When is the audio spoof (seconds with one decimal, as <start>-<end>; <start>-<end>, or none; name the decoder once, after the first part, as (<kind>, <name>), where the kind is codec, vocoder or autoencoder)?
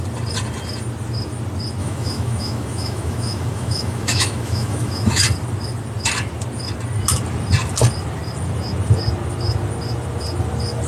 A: 1.8-5.2 (autoencoder, DAC-VAE)